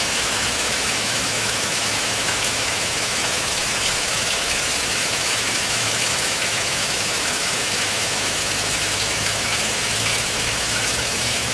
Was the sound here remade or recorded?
remade